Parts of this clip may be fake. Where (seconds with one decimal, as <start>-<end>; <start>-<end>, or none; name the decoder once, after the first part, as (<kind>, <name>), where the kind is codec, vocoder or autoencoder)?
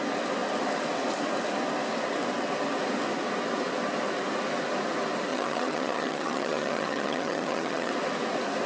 5.3-7.9 (vocoder, HiFi-GAN)